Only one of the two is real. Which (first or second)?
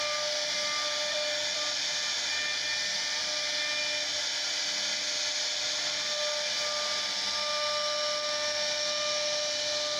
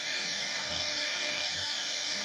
first